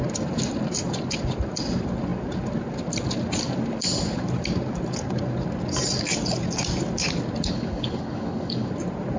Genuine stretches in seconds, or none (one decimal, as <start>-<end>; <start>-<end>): 0.0-7.5; 8.7-9.2